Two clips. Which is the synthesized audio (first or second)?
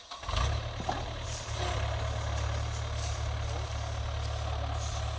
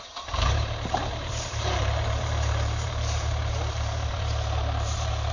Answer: second